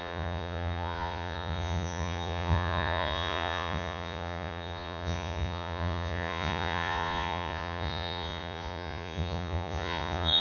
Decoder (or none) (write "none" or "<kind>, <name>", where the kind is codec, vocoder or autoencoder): vocoder, Vocos